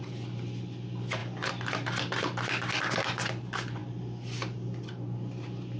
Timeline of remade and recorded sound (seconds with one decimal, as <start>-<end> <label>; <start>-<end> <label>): 0.0-5.8 recorded